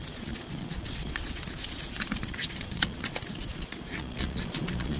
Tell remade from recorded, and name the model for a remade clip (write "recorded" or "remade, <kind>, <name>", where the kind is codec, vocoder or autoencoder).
remade, vocoder, Vocos